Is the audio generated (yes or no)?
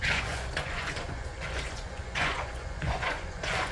yes